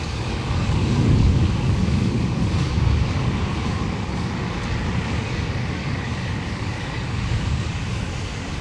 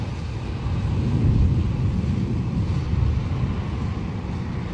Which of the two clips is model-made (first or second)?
first